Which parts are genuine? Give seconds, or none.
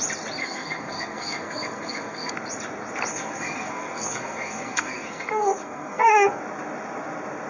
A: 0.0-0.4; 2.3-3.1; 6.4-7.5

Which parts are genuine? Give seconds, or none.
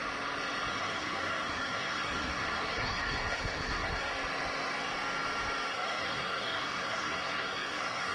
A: 0.0-0.7; 4.1-5.7